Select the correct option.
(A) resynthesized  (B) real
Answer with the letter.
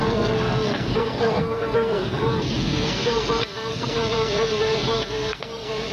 A